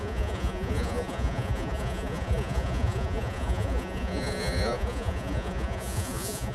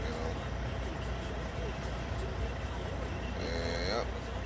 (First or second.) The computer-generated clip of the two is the first